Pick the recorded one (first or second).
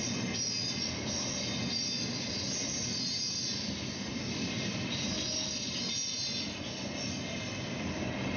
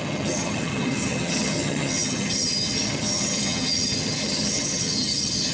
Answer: first